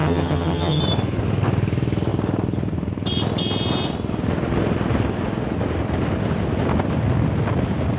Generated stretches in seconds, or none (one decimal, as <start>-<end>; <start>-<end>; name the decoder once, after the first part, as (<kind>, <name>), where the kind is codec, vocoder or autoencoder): 0.0-0.8 (vocoder, HiFi-GAN)